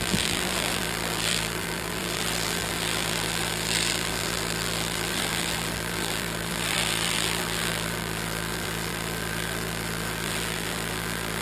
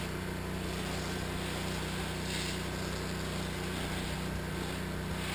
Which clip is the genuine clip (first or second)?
second